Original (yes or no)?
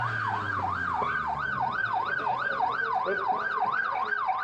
yes